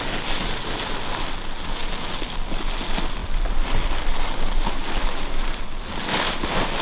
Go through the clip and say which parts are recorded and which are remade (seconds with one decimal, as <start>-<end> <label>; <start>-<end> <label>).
0.0-6.8 recorded

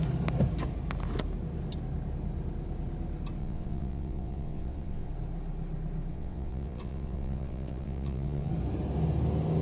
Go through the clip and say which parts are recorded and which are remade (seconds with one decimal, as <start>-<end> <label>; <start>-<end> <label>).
0.0-3.4 recorded; 3.4-5.1 remade; 5.1-6.1 recorded; 6.1-8.5 remade; 8.5-9.6 recorded

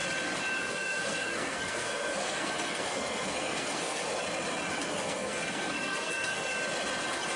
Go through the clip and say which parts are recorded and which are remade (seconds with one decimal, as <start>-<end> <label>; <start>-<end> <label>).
0.0-0.7 recorded; 0.7-4.0 remade; 4.0-4.7 recorded; 4.7-6.5 remade; 6.5-7.4 recorded

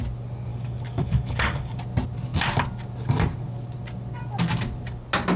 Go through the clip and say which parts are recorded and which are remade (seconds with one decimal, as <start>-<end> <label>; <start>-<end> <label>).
0.0-0.5 recorded; 0.5-1.8 remade; 1.8-5.4 recorded